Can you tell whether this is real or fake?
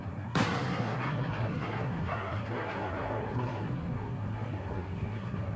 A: fake